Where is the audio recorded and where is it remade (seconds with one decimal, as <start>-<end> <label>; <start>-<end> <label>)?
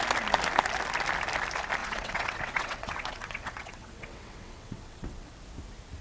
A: 0.0-1.8 recorded; 1.8-5.4 remade; 5.4-6.0 recorded